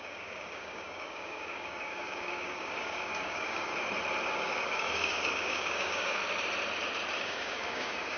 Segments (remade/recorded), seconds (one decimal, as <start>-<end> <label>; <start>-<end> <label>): 0.0-3.7 remade; 3.7-4.3 recorded; 4.3-6.2 remade; 6.2-7.2 recorded; 7.2-8.2 remade